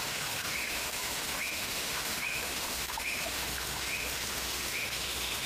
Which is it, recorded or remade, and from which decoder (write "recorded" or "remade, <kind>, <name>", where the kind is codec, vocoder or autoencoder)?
remade, autoencoder, DAC-VAE